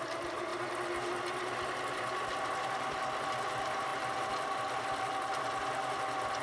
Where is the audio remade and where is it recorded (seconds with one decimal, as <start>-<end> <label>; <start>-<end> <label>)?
0.0-6.4 recorded